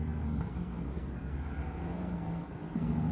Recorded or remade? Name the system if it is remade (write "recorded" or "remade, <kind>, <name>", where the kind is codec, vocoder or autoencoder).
remade, codec, SNAC